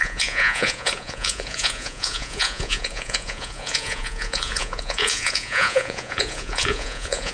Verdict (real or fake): fake